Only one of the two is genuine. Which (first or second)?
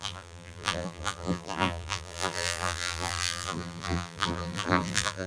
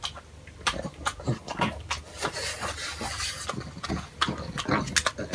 second